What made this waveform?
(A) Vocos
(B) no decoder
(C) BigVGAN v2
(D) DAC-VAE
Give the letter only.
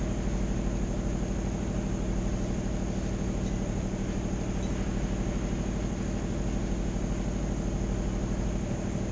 B